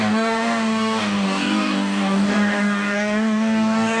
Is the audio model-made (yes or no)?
yes